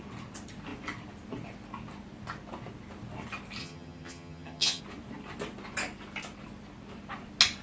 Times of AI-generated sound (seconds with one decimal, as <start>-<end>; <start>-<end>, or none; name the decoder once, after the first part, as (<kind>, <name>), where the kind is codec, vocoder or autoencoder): 3.6-4.8 (vocoder, HiFi-GAN)